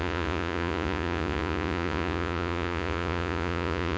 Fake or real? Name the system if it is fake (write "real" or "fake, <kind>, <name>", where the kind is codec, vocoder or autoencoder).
fake, vocoder, Vocos